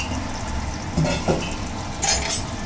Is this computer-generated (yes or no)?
no